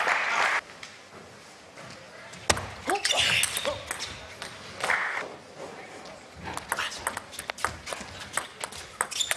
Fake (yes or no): no